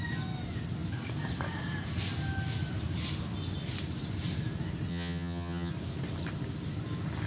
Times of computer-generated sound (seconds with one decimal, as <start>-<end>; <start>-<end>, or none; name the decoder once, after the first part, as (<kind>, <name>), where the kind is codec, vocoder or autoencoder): 4.9-5.7 (vocoder, HiFi-GAN)